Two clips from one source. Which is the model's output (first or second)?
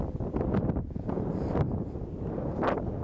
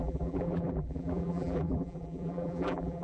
second